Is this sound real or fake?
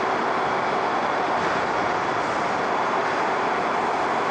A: real